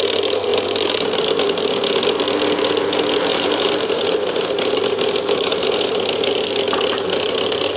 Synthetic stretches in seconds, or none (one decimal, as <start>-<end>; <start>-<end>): 3.3-6.0